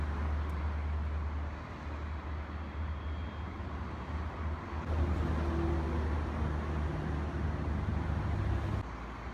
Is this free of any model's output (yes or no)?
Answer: yes